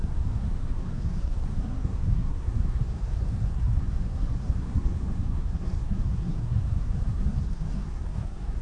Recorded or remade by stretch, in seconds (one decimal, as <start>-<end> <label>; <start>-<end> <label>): 0.0-8.6 remade